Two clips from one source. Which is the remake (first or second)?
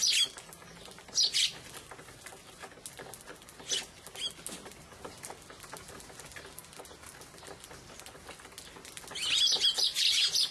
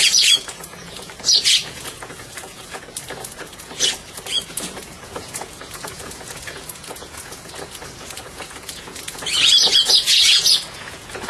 second